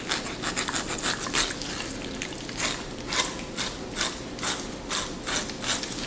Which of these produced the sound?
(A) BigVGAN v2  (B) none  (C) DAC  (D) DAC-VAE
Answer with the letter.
B